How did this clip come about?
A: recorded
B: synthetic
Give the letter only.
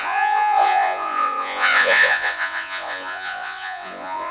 B